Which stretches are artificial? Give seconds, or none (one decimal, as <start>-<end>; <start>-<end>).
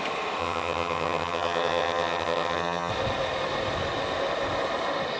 0.4-2.9